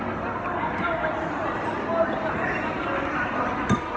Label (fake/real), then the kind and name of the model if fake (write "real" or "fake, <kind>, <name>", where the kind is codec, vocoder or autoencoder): real